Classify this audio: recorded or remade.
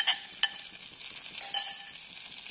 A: recorded